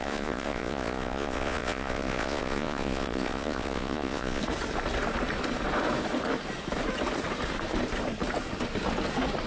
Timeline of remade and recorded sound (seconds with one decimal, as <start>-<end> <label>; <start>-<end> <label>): 0.0-4.4 remade; 4.4-9.5 recorded